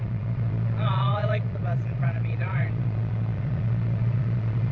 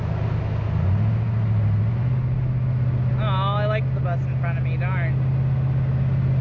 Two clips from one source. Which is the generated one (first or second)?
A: first